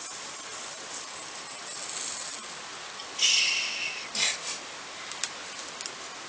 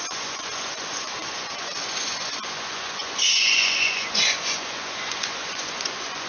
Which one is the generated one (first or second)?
second